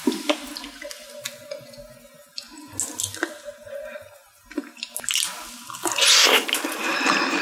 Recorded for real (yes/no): yes